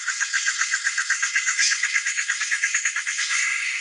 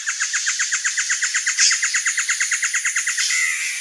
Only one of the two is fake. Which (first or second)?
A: first